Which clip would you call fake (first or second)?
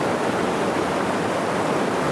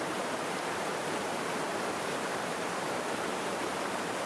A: second